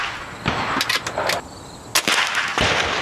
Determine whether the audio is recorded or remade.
recorded